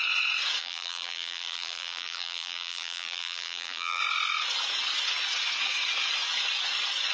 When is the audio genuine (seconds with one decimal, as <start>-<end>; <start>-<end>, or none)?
0.0-0.6; 4.0-7.1